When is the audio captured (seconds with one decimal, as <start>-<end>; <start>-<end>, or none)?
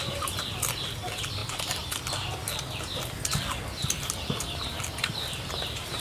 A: 0.0-6.0